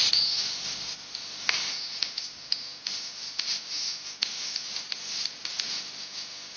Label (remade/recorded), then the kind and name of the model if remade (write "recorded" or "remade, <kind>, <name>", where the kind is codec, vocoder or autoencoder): recorded